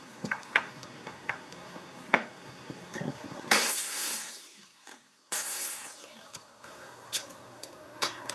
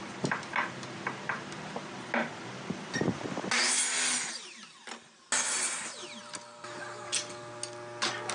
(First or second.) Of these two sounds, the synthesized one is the first